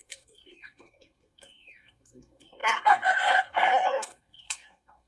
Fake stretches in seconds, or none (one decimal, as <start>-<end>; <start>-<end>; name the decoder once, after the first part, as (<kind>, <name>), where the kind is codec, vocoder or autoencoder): 0.0-5.1 (codec, SNAC)